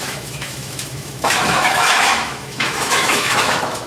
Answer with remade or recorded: remade